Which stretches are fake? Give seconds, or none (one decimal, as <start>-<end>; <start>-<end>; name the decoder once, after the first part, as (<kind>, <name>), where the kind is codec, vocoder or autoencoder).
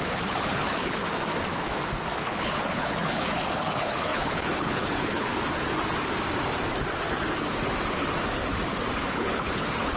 0.0-1.0 (codec, HILCodec); 2.2-5.3; 9.1-10.0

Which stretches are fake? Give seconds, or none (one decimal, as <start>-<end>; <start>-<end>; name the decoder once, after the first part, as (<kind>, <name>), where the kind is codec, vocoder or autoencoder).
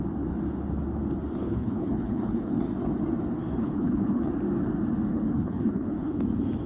1.4-2.6 (codec, HILCodec); 3.6-4.3; 5.1-6.2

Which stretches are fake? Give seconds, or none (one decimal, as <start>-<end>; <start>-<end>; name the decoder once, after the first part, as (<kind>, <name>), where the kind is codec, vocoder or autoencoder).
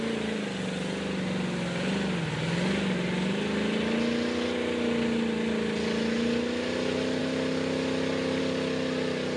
none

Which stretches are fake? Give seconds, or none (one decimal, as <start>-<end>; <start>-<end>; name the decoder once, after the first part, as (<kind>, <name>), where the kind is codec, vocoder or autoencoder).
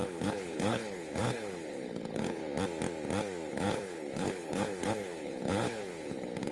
0.0-2.4 (codec, HILCodec); 3.5-6.5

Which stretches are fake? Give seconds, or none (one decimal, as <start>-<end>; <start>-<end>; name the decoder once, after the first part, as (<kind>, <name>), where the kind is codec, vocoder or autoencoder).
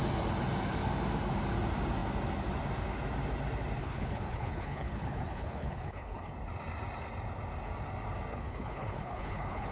3.8-6.3 (codec, HILCodec); 8.3-9.7